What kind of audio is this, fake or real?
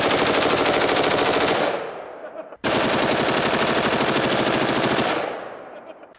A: real